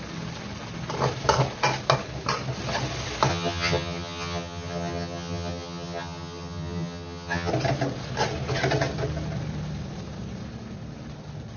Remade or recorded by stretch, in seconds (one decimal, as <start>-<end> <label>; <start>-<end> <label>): 0.0-3.3 recorded; 3.3-7.5 remade; 7.5-11.6 recorded

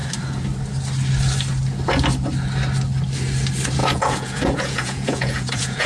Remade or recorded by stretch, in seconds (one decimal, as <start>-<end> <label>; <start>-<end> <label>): 0.0-3.8 recorded; 3.8-5.9 remade

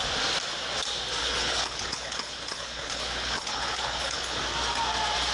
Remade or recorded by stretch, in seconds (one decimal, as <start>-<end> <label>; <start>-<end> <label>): 0.0-1.2 recorded; 1.2-4.4 remade; 4.4-5.3 recorded

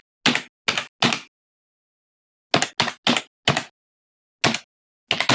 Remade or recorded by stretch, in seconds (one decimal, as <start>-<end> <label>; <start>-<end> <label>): 0.0-5.3 recorded